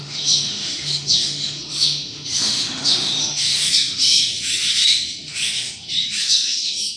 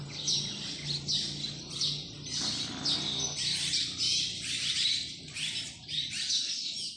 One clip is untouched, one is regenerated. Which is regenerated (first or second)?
first